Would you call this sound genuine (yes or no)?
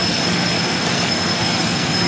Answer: no